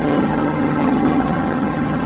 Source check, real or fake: fake